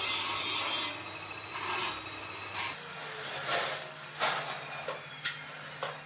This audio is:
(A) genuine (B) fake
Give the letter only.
A